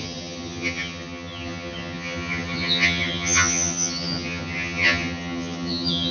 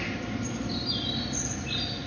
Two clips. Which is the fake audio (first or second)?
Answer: first